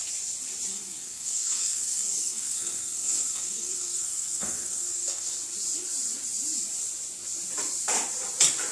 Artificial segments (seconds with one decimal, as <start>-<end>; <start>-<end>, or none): 0.7-5.3